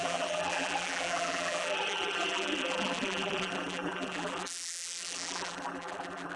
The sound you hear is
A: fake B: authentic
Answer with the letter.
A